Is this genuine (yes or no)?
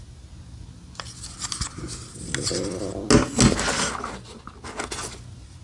yes